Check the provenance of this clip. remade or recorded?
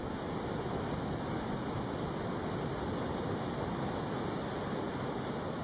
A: recorded